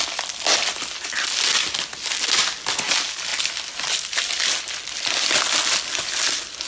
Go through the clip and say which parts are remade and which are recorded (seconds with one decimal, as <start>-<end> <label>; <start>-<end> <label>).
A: 0.0-6.7 recorded

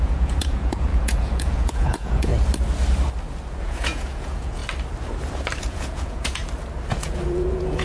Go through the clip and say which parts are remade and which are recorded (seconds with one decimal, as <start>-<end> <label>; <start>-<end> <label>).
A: 0.0-2.3 remade; 2.3-3.6 recorded; 3.6-4.6 remade; 4.6-5.6 recorded; 5.6-6.4 remade; 6.4-6.9 recorded; 6.9-7.8 remade